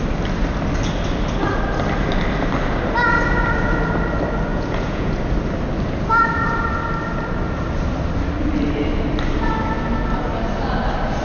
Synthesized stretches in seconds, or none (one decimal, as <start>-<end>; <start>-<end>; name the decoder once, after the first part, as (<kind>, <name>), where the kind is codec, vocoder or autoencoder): 4.5-5.1 (vocoder, Vocos)